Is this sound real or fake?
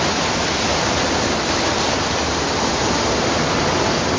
real